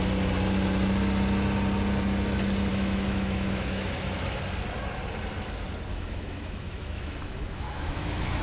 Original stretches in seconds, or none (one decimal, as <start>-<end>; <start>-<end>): 0.0-2.7; 4.4-5.9

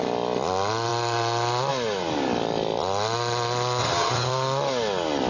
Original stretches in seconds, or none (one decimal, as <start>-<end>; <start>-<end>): 0.0-3.8; 4.3-5.3